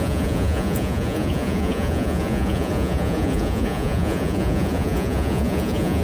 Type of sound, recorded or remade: remade